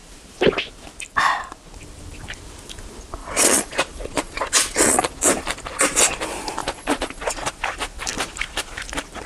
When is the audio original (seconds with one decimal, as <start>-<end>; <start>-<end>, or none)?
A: 0.0-3.2; 5.1-6.6; 7.5-9.3